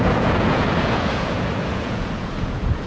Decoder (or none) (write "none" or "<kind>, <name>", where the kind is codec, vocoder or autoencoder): vocoder, Vocos